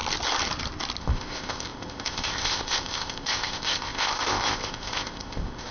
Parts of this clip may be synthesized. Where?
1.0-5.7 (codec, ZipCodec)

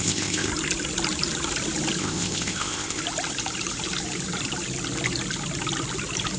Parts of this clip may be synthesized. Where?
0.0-0.5 (codec, ZipCodec); 2.0-3.0